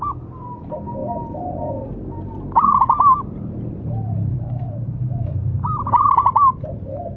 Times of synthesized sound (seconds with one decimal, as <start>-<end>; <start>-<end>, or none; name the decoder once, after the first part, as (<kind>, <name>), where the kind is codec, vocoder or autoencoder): 1.0-1.7 (vocoder, BigVGAN v2); 2.3-5.9